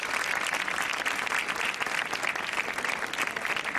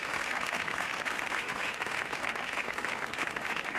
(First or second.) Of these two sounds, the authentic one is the first